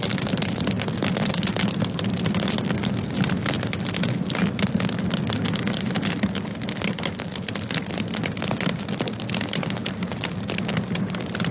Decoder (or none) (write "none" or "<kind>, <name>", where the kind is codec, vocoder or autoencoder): none